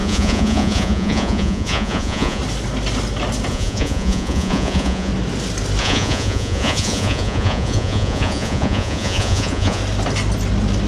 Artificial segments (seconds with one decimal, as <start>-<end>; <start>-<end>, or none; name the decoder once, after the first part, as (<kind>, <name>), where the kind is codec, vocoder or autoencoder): 0.0-2.4 (vocoder, Vocos); 3.5-5.1; 5.8-9.8